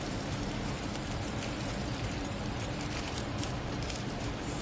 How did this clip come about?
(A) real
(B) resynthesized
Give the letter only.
B